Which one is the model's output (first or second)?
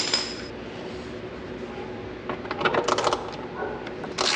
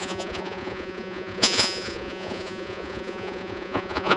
second